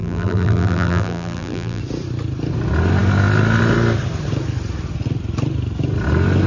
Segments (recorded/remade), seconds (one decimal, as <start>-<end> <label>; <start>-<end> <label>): 0.0-1.8 remade; 1.8-6.5 recorded